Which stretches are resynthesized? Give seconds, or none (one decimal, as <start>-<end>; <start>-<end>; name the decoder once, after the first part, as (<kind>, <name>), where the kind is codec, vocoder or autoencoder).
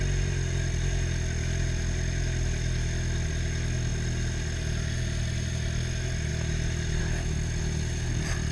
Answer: none